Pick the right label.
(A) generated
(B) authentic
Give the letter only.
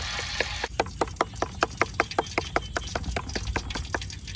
B